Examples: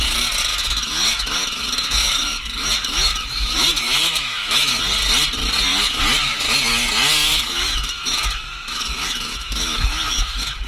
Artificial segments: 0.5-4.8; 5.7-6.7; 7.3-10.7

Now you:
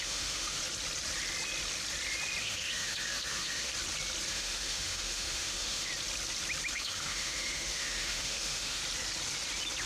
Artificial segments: 0.0-0.6; 2.4-3.7; 4.3-5.9; 6.7-8.8

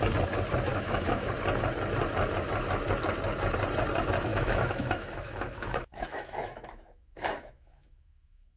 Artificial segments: 0.7-1.3; 4.3-8.6

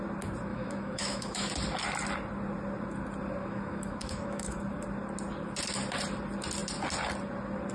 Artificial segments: 0.5-1.5; 3.4-4.6

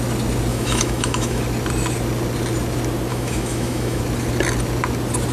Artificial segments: 0.5-1.4; 3.1-4.0

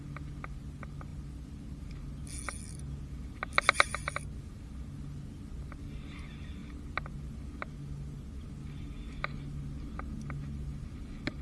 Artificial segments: none

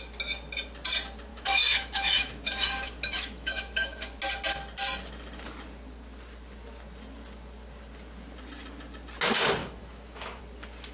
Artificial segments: 1.3-4.2; 9.6-10.4

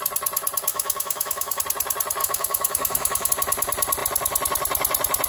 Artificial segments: 0.7-1.6; 2.2-3.3